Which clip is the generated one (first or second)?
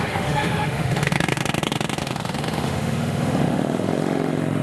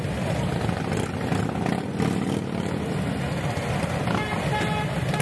first